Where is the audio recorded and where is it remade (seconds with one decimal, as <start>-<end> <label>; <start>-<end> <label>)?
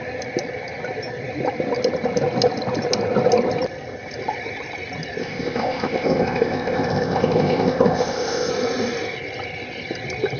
0.0-5.2 recorded; 5.2-8.5 remade; 8.5-10.4 recorded